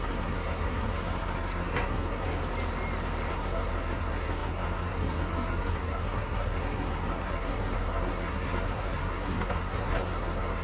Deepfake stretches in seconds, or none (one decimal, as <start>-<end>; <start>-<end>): 0.0-2.4; 3.3-10.6